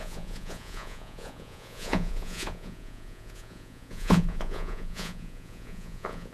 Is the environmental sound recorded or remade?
remade